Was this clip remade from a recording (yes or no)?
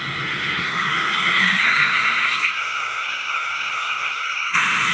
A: yes